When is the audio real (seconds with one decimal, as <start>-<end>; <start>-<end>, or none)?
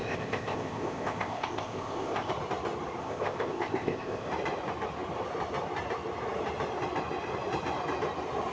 2.3-3.0; 4.3-8.5